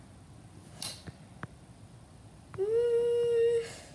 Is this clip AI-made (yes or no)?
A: no